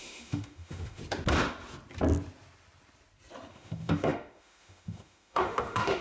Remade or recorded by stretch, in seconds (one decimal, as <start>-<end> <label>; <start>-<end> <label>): 0.0-1.0 remade; 1.0-3.5 recorded; 3.5-6.0 remade